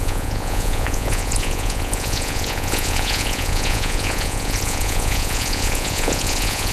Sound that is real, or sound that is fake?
fake